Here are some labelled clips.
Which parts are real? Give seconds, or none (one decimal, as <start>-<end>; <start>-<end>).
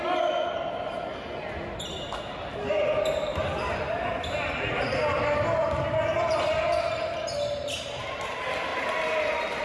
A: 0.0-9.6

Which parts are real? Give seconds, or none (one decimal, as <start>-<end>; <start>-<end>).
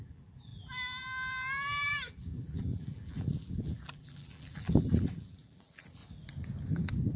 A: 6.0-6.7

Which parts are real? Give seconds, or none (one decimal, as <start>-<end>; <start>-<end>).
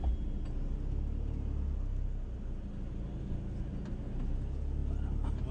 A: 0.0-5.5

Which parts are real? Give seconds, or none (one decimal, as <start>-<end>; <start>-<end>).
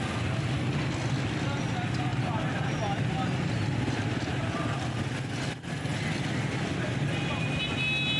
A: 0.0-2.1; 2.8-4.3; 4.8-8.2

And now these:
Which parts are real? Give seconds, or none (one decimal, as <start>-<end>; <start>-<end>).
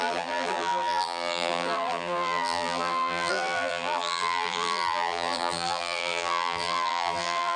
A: none